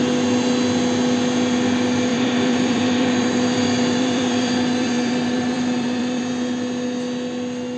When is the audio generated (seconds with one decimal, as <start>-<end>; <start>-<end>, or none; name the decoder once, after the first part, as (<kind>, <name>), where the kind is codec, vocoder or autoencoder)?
2.1-6.3 (vocoder, BigVGAN v2)